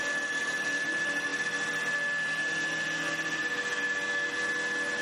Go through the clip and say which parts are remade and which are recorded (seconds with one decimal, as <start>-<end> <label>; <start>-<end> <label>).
0.0-5.0 recorded